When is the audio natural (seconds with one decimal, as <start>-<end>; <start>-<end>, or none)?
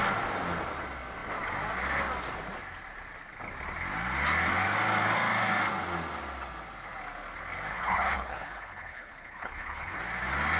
0.0-7.7; 10.0-10.6